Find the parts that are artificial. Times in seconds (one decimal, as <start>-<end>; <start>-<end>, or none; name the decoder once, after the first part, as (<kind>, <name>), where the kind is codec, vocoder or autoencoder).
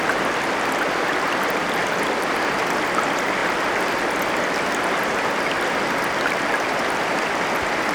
0.0-7.9 (vocoder, BigVGAN v2)